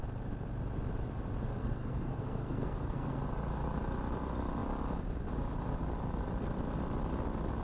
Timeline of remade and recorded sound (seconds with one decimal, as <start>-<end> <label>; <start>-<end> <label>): 0.0-1.6 recorded; 1.6-3.2 remade; 3.2-7.6 recorded